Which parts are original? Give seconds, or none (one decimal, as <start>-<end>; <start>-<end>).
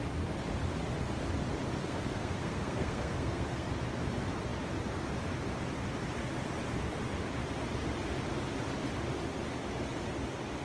0.0-1.8; 3.7-10.6